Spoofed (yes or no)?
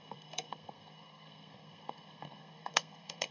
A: yes